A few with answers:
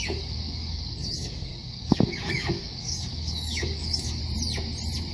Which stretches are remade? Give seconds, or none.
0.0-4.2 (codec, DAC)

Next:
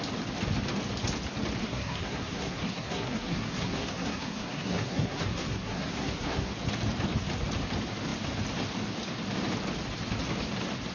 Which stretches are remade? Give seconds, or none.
1.6-6.5 (codec, SNAC)

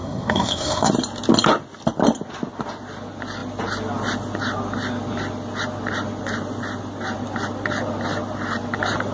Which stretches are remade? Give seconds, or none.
0.0-0.9 (codec, SNAC)

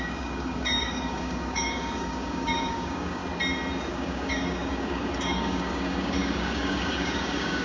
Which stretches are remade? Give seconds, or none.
0.0-3.2 (codec, DAC); 3.9-7.6

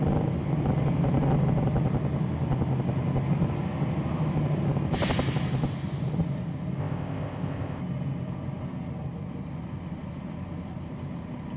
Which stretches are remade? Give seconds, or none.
6.8-7.8 (codec, ZipCodec)